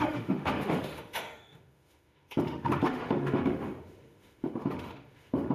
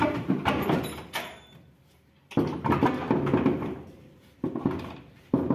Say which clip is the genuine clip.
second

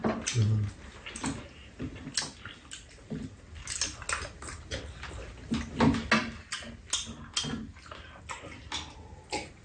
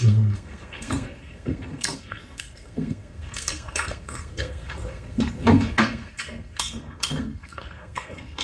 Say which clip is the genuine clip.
first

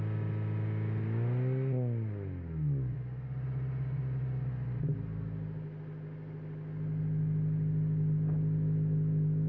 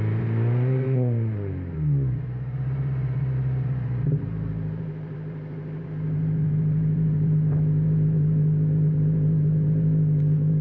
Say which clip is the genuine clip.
first